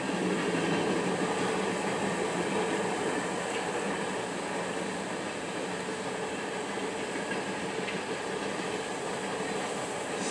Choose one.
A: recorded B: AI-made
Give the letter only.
A